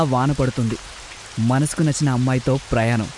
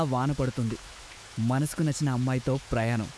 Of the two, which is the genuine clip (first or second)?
first